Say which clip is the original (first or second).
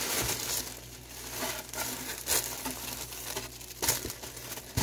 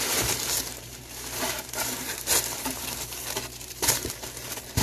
first